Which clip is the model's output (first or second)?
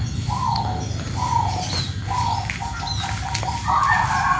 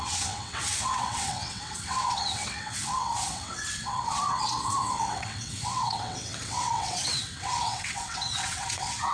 second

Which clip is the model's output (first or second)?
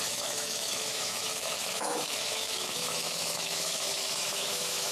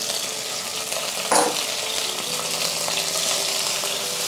first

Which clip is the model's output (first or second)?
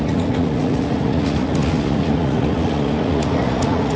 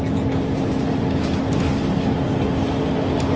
first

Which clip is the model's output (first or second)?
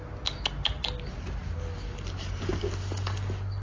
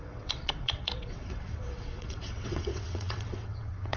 second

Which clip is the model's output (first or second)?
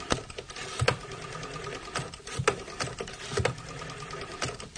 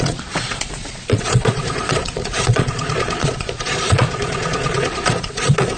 second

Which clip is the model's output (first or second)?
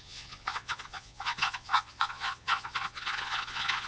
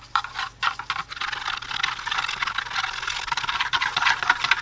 first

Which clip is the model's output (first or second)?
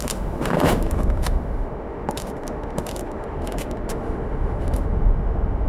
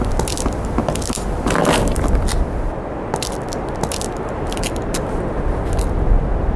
first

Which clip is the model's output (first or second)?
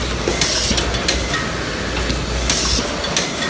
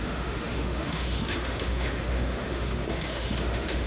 second